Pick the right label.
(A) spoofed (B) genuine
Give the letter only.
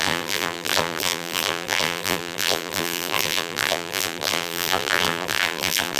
A